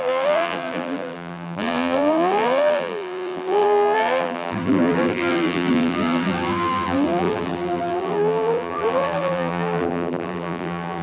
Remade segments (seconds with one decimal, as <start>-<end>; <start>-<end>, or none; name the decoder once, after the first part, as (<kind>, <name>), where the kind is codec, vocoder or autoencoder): 0.0-11.0 (vocoder, BigVGAN v2)